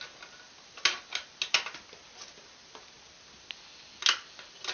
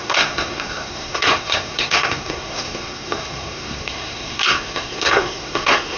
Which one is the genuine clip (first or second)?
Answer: first